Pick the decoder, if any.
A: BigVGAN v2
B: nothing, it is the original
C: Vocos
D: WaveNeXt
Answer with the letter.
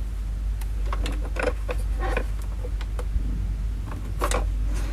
B